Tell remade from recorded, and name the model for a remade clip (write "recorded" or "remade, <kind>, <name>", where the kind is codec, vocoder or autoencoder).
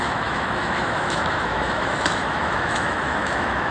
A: remade, autoencoder, DAC-VAE